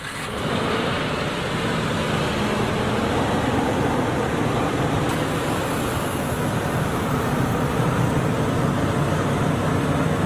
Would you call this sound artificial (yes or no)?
no